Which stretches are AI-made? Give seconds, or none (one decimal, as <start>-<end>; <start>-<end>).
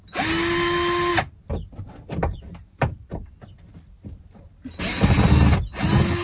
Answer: 1.1-4.8